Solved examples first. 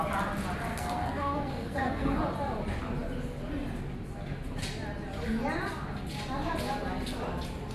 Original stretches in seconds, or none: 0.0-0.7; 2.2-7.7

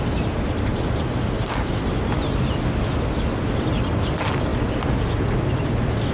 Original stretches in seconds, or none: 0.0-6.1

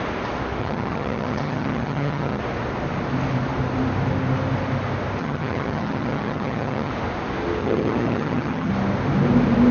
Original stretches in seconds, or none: 0.0-0.6; 2.4-5.2; 6.9-7.6; 8.7-9.7

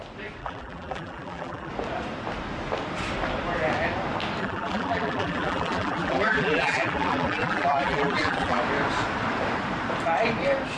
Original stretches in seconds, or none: 0.0-0.4; 1.7-4.4; 8.6-10.8

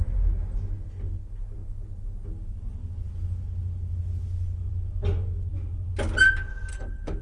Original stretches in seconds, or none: 0.0-6.7

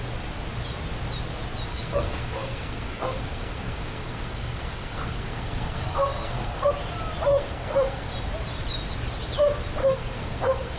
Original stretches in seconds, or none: 0.0-1.7; 6.7-7.3; 8.1-9.8

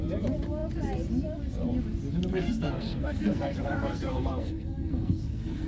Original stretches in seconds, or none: 0.0-2.3